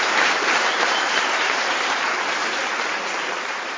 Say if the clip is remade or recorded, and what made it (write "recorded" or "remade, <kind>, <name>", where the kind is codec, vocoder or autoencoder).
remade, vocoder, BigVGAN v2